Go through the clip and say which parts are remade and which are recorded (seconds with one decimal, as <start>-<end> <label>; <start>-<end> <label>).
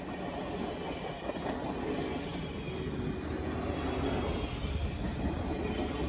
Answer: 0.0-6.1 recorded